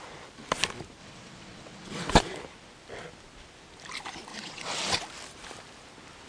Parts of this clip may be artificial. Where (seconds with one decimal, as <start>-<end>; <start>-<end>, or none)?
1.0-2.1; 4.3-5.0